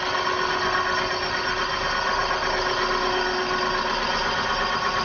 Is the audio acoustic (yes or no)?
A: yes